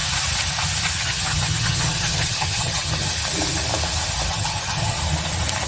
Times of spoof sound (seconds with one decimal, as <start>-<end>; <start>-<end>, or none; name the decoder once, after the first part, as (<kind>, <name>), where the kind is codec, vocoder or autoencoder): 0.9-3.0 (vocoder, HiFi-GAN); 4.3-5.0